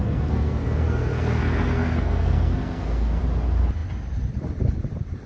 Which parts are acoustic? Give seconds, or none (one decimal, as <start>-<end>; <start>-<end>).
3.2-5.3